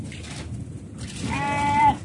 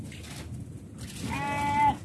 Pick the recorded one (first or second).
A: second